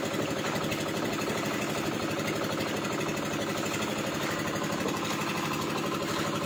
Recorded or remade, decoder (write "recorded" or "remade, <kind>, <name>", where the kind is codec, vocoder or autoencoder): recorded